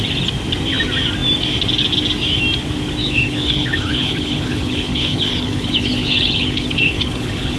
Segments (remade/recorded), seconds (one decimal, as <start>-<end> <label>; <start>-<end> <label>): 0.0-3.0 recorded; 3.0-7.6 remade